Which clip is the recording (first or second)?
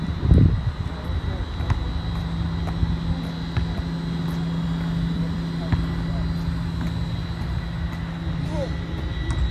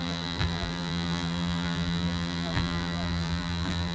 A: first